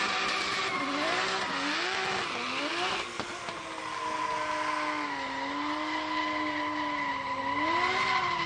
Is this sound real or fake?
real